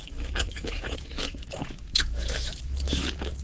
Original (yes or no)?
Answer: no